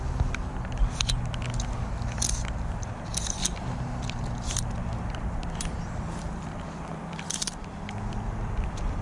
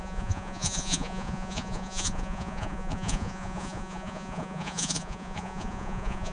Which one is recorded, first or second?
first